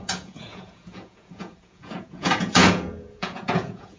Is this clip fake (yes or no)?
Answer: yes